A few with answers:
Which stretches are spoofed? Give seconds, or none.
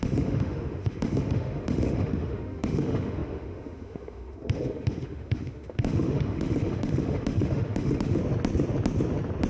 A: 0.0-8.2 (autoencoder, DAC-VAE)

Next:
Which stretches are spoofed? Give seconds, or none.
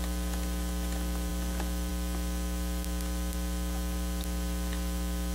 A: none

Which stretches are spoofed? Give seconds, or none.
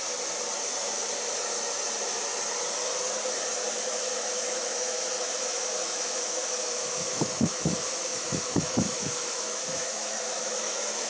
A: 3.8-11.1 (autoencoder, DAC-VAE)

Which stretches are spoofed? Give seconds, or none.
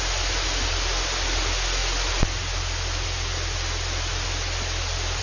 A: none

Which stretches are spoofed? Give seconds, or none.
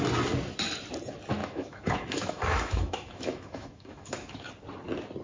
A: 1.4-4.5 (autoencoder, DAC-VAE)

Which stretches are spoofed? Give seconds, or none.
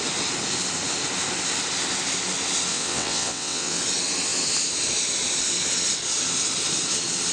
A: 2.7-3.8 (vocoder, WaveNeXt)